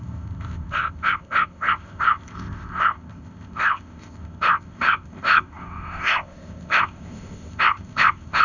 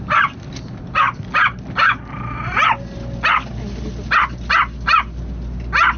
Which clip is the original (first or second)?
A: second